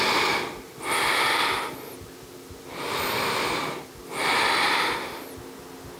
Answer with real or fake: real